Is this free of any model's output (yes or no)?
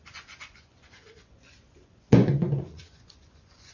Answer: no